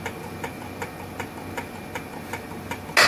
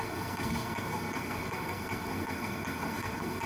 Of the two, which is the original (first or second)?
first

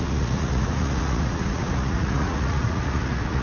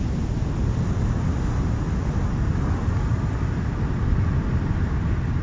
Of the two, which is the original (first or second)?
second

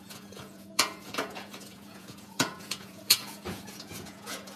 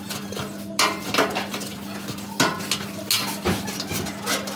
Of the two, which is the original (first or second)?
second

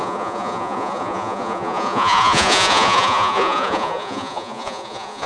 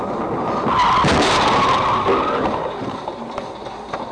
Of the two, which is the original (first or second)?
second